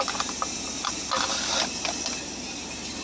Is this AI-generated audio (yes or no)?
no